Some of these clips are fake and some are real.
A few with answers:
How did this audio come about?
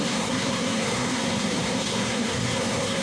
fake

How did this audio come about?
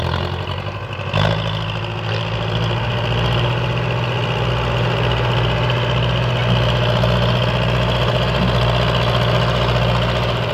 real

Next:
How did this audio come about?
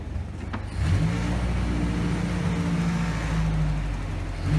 real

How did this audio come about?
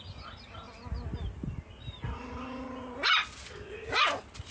real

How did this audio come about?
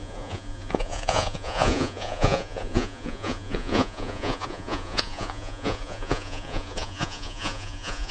fake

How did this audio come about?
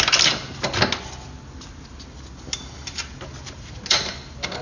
real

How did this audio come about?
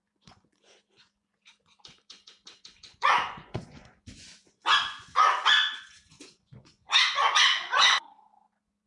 fake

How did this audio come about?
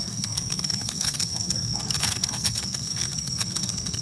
fake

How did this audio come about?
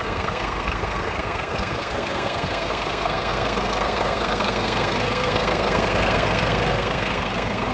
fake